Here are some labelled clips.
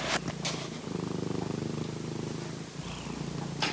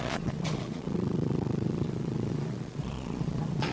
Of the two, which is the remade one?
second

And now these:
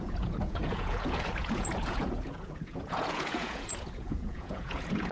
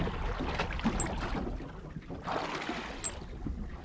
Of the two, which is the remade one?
first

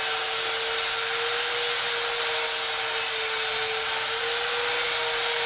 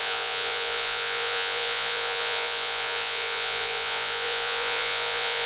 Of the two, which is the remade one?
second